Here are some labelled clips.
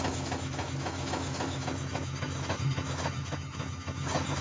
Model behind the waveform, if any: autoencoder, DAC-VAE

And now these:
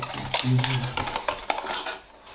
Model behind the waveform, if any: none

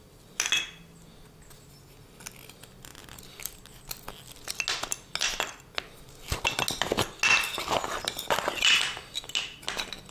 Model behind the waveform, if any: none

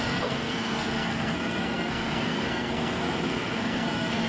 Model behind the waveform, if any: codec, SNAC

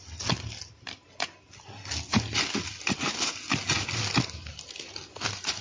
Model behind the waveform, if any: none